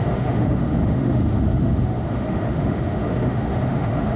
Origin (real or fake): fake